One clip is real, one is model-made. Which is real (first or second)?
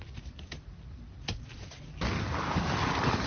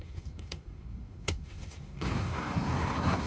first